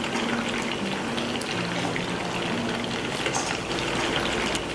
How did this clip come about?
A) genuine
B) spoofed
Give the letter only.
A